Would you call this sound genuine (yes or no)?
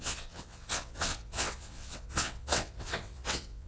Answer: no